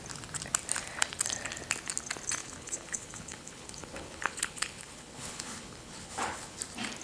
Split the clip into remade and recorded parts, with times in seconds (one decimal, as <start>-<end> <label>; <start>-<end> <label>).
0.0-2.4 recorded; 2.4-6.6 remade; 6.6-7.0 recorded